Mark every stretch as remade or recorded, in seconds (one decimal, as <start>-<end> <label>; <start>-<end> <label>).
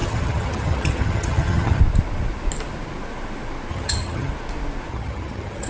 0.0-1.8 remade; 1.8-3.7 recorded; 3.7-4.3 remade; 4.3-4.9 recorded; 4.9-5.7 remade